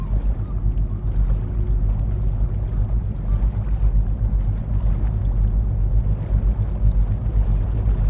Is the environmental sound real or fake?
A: real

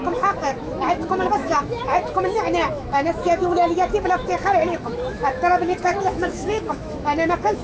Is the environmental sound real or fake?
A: fake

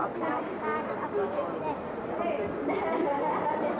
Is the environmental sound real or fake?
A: real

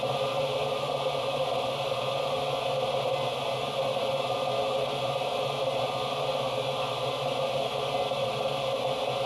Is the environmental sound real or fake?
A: real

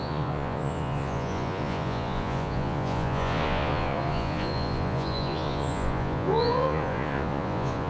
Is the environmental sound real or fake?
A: fake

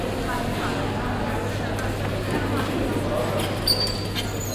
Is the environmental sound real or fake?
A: real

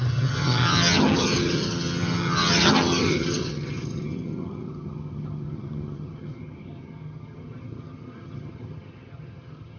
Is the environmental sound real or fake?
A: fake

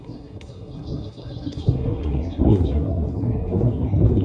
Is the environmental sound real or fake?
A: fake